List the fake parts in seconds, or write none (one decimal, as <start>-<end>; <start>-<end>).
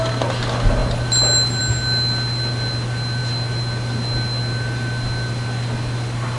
none